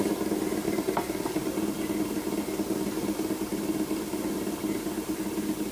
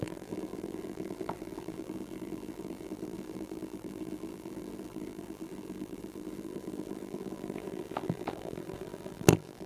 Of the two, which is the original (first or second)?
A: first